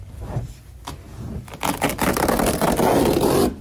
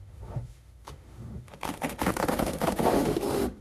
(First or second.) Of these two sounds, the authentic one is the first